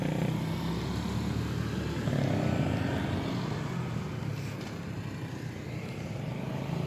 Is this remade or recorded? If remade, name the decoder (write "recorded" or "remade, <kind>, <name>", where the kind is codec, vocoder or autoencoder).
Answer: recorded